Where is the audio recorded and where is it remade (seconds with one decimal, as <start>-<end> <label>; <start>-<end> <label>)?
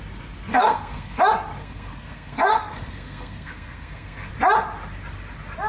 0.0-0.5 recorded; 0.5-1.2 remade; 1.2-1.6 recorded; 1.6-4.3 remade; 4.3-5.7 recorded